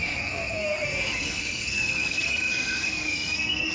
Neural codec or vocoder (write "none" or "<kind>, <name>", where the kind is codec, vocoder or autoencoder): codec, SNAC